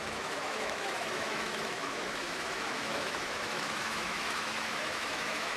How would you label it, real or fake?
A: fake